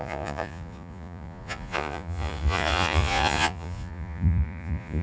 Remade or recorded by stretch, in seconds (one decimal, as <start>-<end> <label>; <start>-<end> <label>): 0.0-5.0 remade